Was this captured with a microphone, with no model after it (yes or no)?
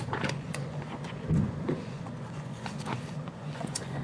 no